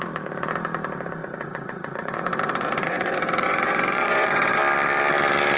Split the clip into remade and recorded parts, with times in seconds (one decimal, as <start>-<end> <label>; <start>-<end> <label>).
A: 0.0-1.2 recorded; 1.2-4.6 remade; 4.6-5.6 recorded